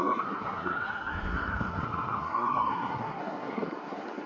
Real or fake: fake